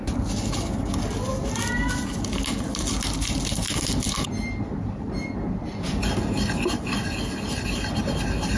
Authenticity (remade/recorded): recorded